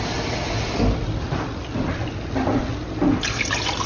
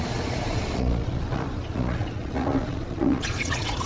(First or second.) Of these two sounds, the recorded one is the first